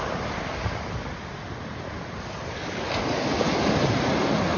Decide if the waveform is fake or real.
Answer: real